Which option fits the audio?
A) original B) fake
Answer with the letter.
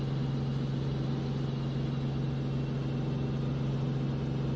A